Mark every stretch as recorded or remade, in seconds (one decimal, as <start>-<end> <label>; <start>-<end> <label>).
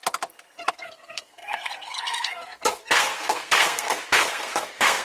0.0-0.7 recorded; 0.7-5.0 remade